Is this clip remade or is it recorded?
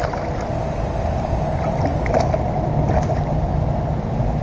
recorded